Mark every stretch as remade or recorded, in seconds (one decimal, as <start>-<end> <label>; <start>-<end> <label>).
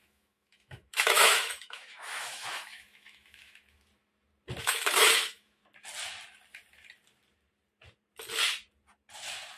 0.0-3.9 remade; 3.9-4.6 recorded; 4.6-5.6 remade; 5.6-9.6 recorded